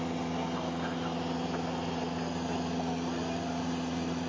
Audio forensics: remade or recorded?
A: recorded